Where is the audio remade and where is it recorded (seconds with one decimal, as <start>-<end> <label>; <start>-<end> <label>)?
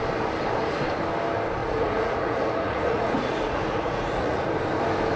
0.0-1.6 recorded; 1.6-4.5 remade; 4.5-5.2 recorded